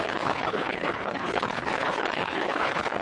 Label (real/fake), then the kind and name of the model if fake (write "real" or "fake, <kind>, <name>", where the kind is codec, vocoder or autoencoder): fake, codec, HILCodec